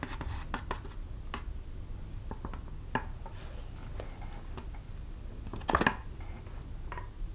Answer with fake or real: real